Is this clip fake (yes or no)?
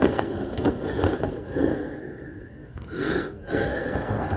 yes